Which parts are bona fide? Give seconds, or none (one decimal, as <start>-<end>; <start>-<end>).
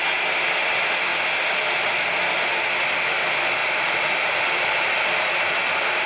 0.0-3.6; 5.2-6.1